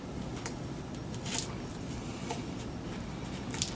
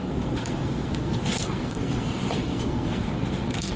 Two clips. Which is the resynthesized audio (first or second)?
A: second